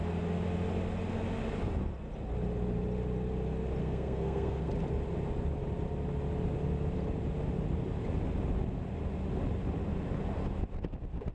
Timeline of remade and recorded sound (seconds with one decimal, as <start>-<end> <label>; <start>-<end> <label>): 0.0-3.8 recorded; 3.8-4.7 remade; 4.7-11.3 recorded